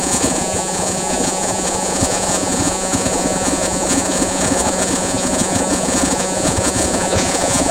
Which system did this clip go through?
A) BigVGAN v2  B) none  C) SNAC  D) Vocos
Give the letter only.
D